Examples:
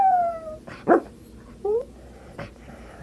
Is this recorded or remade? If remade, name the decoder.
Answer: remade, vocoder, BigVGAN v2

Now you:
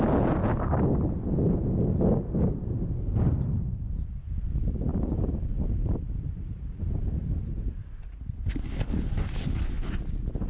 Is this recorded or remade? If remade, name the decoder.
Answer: recorded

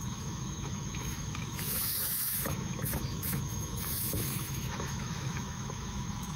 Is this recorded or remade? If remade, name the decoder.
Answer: remade, autoencoder, DAC-VAE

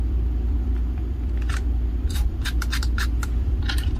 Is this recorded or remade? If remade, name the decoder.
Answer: remade, vocoder, BigVGAN v2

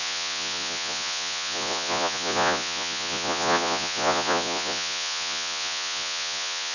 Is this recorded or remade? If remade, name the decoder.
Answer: remade, vocoder, Vocos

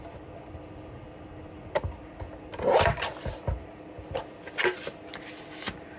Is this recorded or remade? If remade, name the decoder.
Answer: recorded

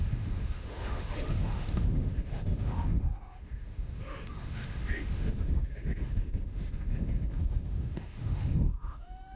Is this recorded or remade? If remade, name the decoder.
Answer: remade, autoencoder, DAC-VAE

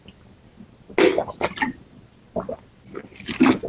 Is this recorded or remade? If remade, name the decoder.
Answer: recorded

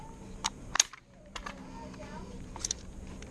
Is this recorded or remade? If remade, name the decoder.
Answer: remade, vocoder, BigVGAN v2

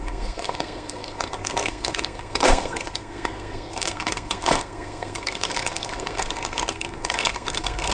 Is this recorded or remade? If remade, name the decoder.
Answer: remade, codec, SNAC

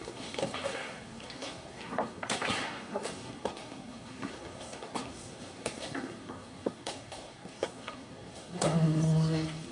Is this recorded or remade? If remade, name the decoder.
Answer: remade, codec, SNAC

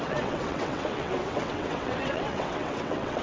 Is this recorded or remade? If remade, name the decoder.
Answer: remade, vocoder, WaveNeXt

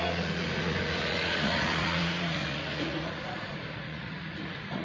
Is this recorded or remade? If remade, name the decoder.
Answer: remade, vocoder, Vocos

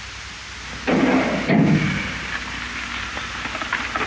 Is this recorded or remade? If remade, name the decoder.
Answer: recorded